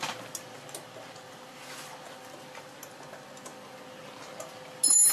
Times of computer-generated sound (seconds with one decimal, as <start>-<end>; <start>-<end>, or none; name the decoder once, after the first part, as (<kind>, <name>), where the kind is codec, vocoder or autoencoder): none